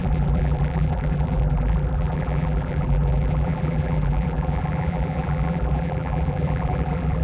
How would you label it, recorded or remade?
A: remade